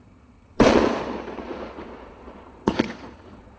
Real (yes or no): no